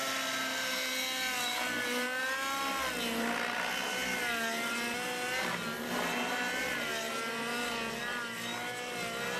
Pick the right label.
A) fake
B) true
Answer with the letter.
B